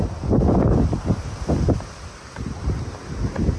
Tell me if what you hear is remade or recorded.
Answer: recorded